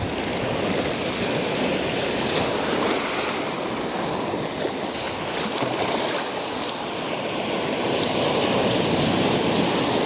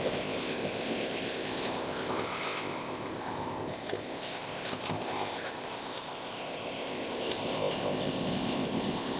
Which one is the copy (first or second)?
second